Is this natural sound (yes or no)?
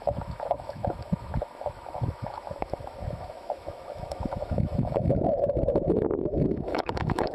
no